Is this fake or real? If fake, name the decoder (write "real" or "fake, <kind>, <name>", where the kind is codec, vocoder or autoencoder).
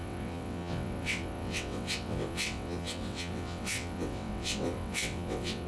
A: fake, vocoder, WaveNeXt